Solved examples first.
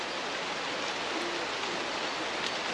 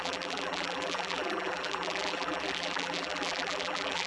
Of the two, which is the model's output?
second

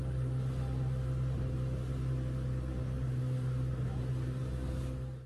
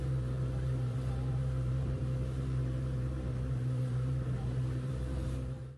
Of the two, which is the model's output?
second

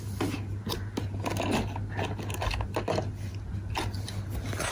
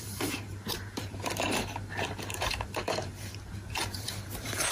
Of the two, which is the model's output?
second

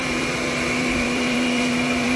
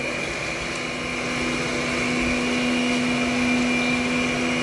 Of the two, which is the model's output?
first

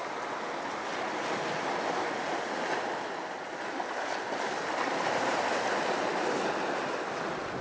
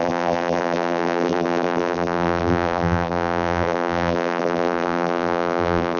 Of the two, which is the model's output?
second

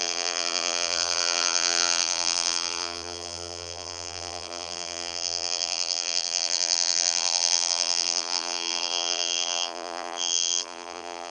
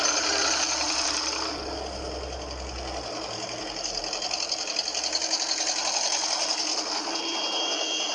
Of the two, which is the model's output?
first